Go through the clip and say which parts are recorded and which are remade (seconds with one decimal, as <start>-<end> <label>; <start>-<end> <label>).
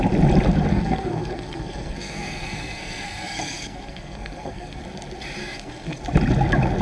0.0-0.7 recorded; 0.7-4.8 remade; 4.8-5.4 recorded; 5.4-6.0 remade; 6.0-6.8 recorded